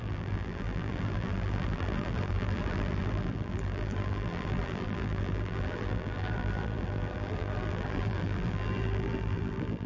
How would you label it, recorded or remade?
remade